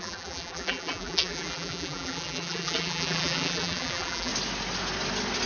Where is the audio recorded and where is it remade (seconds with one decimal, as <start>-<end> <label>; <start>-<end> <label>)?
0.0-4.3 remade; 4.3-5.5 recorded